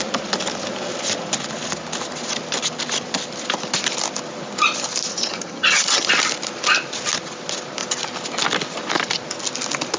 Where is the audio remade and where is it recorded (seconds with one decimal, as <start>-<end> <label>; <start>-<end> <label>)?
0.0-5.1 recorded; 5.1-6.1 remade; 6.1-10.0 recorded